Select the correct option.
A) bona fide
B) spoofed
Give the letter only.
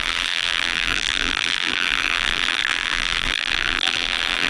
B